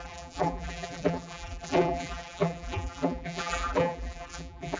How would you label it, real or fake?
fake